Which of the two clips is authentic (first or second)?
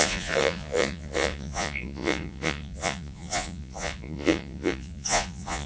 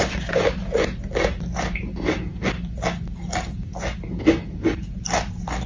second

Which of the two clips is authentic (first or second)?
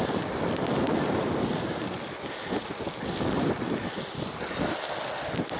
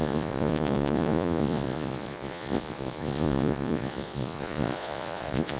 first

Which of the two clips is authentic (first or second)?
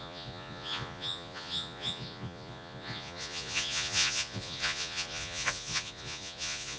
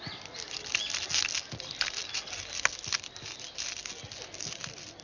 second